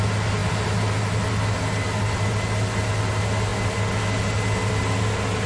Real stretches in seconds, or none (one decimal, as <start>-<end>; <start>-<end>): 0.0-5.5

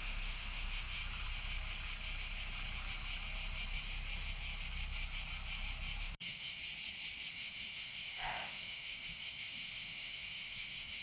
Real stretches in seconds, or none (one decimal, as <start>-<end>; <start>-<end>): 1.0-6.0; 6.6-7.3

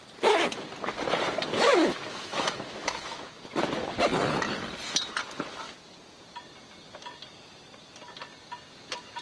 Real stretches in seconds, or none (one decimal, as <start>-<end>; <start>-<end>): 0.0-1.7; 3.2-9.2